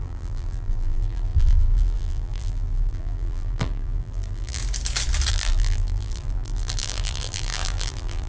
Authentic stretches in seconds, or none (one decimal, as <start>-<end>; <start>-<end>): 4.6-5.3